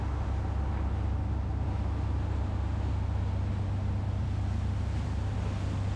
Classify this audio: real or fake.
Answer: real